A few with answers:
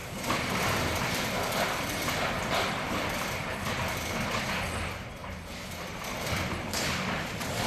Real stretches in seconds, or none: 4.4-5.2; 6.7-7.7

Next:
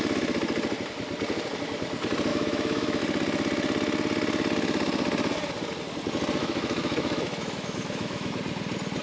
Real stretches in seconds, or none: 0.0-2.3; 3.0-6.4; 8.3-9.0